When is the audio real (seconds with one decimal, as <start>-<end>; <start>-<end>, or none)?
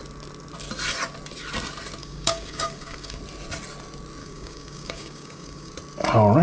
0.0-2.0; 3.2-4.2; 5.7-6.4